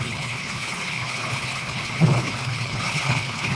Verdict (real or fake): fake